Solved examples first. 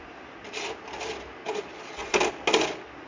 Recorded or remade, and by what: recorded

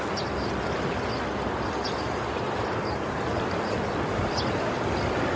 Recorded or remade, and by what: recorded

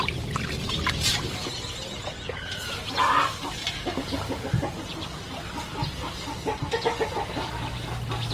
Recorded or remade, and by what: recorded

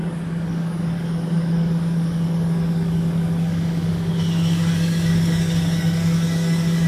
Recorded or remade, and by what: remade, codec, DAC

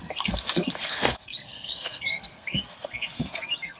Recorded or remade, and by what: remade, codec, SNAC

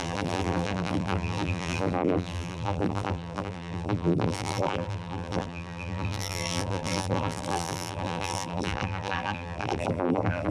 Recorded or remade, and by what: remade, vocoder, BigVGAN v2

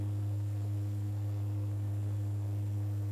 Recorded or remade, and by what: remade, codec, SNAC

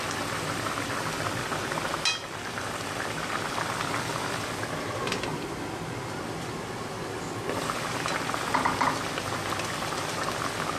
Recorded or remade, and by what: recorded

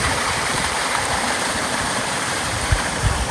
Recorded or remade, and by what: remade, vocoder, BigVGAN v2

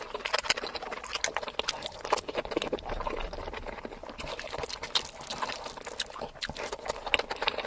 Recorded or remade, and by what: recorded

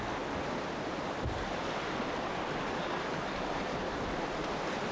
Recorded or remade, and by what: recorded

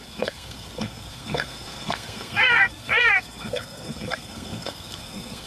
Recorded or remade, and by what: remade, codec, SNAC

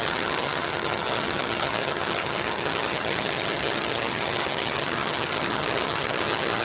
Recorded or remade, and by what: remade, vocoder, HiFi-GAN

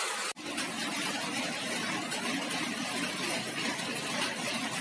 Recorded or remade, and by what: recorded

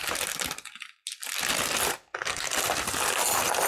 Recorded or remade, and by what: recorded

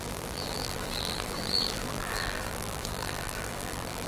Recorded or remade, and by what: remade, vocoder, BigVGAN v2